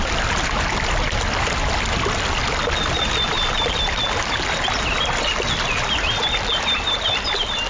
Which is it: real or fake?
real